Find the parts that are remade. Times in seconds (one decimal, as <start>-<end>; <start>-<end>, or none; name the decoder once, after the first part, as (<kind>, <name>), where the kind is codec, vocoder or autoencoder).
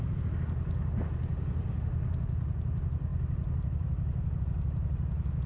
none